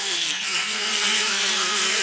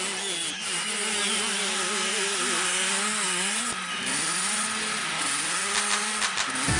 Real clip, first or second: second